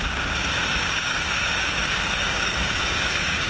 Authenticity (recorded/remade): remade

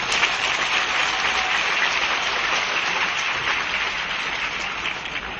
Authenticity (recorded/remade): remade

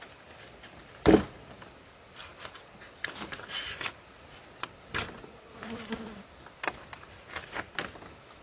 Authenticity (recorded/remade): remade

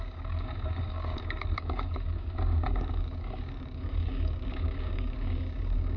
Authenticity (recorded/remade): remade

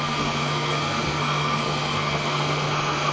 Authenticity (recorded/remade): remade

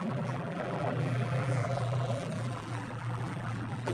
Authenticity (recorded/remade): remade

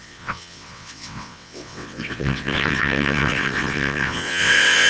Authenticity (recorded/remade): remade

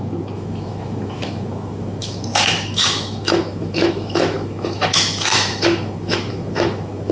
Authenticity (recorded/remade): remade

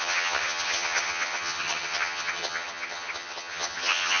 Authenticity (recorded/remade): remade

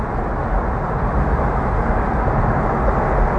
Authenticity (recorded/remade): recorded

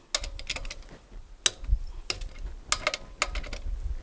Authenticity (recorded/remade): recorded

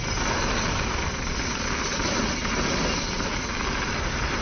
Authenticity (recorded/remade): recorded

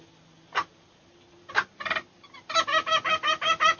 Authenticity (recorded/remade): recorded